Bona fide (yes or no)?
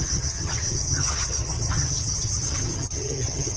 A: no